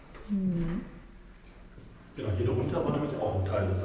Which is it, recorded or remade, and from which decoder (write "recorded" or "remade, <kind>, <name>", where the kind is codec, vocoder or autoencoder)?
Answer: remade, vocoder, BigVGAN v2